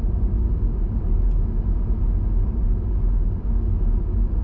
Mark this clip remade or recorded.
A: recorded